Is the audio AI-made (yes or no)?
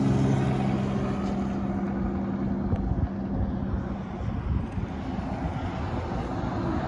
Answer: no